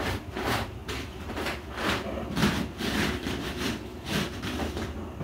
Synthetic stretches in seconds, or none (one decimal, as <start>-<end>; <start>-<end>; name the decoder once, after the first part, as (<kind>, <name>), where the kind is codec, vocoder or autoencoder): 0.0-5.2 (vocoder, BigVGAN v2)